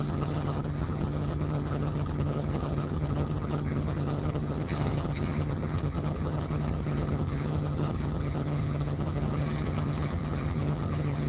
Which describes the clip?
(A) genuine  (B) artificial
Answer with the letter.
B